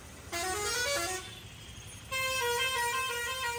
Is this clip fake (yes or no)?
no